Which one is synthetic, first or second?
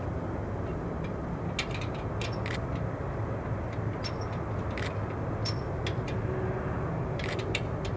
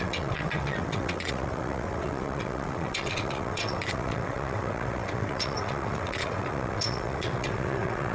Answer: second